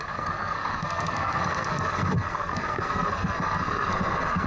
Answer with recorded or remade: remade